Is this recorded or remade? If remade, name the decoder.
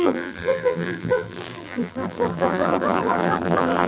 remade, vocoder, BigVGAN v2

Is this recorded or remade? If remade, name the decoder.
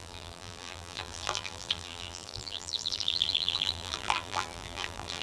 remade, vocoder, BigVGAN v2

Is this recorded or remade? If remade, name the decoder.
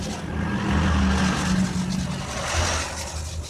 recorded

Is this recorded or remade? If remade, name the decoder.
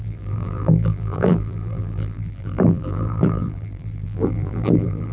remade, vocoder, BigVGAN v2